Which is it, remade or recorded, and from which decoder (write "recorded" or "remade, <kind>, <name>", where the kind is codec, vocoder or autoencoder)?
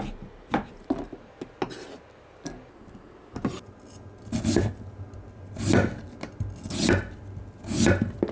recorded